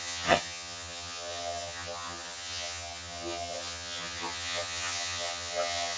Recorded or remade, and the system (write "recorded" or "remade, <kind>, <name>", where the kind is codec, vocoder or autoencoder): remade, vocoder, HiFi-GAN